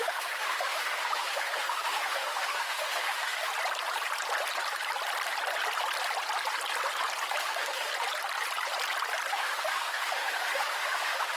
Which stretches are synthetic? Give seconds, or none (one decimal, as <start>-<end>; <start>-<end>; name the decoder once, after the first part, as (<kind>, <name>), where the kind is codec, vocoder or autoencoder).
0.0-3.5 (autoencoder, DAC-VAE); 7.4-7.9; 9.3-11.4